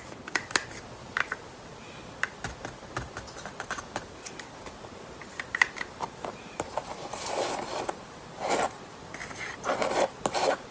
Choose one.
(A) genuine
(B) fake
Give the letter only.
A